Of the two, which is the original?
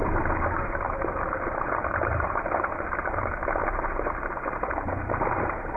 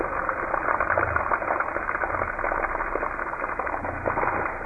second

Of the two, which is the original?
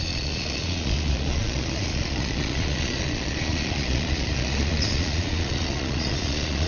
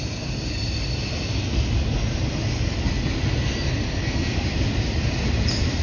second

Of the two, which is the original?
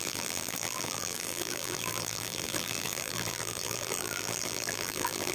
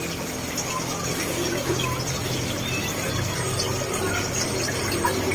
second